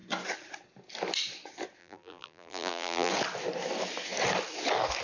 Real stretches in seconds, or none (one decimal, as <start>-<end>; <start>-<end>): 0.0-1.8; 3.1-5.0